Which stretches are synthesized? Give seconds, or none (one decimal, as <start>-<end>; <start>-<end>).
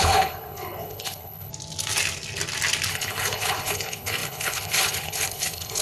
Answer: 0.0-1.5; 2.9-5.8